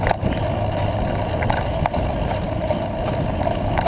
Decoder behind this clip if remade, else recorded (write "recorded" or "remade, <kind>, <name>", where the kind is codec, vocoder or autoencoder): recorded